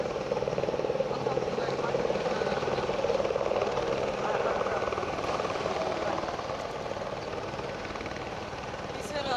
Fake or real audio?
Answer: fake